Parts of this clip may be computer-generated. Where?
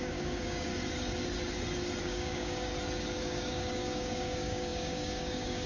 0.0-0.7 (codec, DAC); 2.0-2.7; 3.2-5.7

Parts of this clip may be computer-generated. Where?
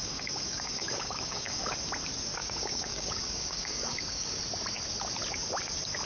0.0-1.6 (codec, DAC); 2.4-4.4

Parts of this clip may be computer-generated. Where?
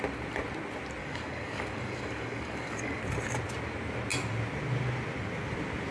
1.0-3.0 (codec, DAC)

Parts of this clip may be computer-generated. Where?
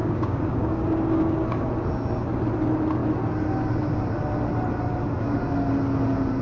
0.0-1.7 (codec, DAC)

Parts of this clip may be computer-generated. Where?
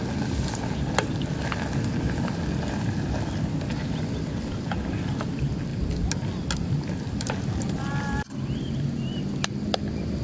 none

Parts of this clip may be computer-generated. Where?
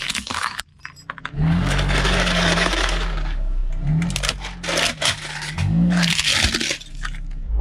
0.0-0.7 (codec, DAC); 1.2-3.6; 5.0-6.3; 6.9-7.6